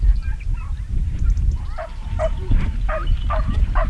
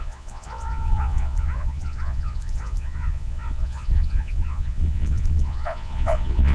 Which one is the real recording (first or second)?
first